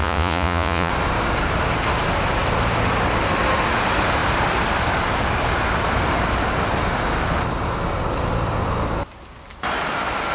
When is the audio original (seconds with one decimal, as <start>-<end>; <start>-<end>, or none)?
0.9-10.3